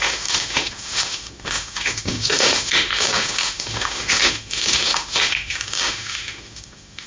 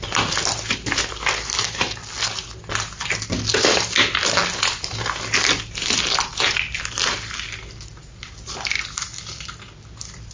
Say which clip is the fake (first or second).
first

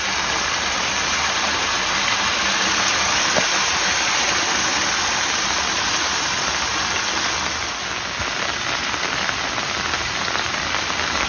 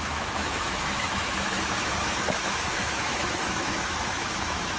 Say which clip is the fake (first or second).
second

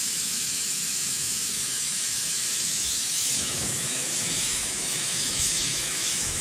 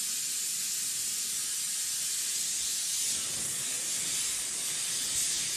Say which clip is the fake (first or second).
first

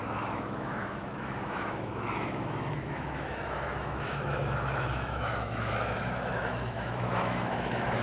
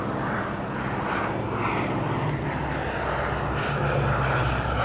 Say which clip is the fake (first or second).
first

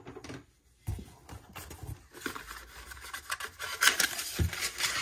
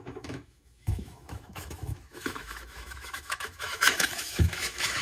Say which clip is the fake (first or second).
second